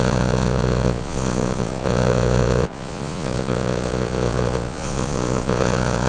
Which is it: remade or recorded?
remade